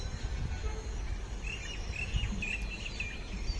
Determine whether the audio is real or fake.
real